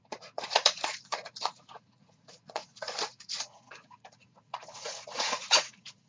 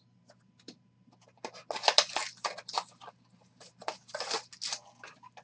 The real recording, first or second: second